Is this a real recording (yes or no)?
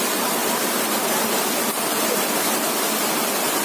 yes